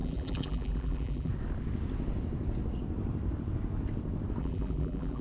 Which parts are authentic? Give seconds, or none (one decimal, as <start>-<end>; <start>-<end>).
1.3-4.4